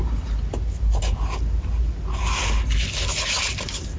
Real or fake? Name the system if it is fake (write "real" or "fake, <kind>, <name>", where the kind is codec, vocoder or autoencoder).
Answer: real